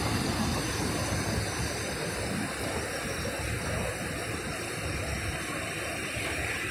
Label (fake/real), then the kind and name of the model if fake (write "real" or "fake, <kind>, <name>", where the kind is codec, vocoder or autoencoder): real